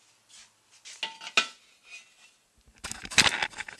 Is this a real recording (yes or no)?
yes